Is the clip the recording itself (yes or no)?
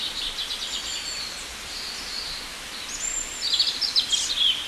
yes